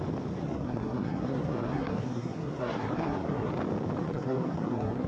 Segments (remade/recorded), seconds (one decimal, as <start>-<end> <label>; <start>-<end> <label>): 0.0-0.4 recorded; 0.4-3.5 remade; 3.5-4.0 recorded; 4.0-5.1 remade